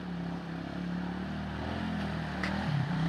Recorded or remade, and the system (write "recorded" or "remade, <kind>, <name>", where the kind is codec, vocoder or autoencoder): recorded